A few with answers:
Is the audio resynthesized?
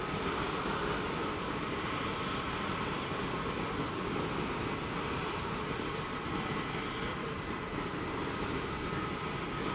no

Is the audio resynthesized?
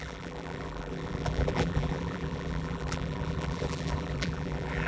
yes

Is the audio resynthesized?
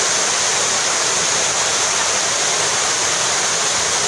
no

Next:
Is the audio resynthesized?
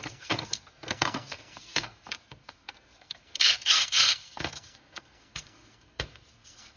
yes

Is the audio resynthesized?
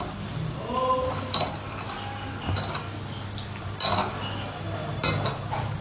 no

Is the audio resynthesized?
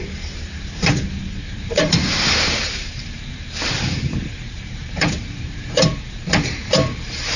yes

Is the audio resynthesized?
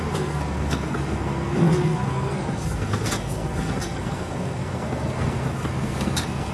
yes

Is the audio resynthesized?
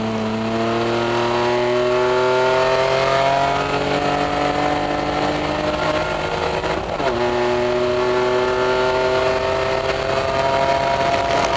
no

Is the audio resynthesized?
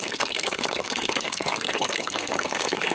yes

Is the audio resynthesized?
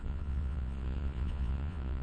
yes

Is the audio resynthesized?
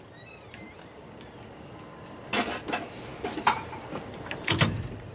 yes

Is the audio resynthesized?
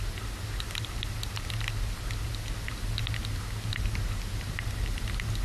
no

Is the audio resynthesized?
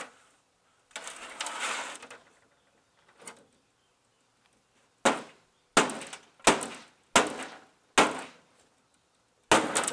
no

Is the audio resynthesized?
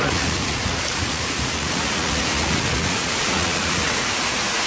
yes